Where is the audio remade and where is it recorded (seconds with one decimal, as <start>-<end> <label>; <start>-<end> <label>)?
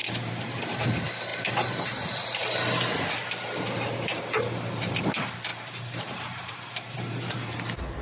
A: 0.0-0.6 remade; 0.6-1.3 recorded; 1.3-3.0 remade; 3.0-5.5 recorded; 5.5-7.6 remade; 7.6-8.0 recorded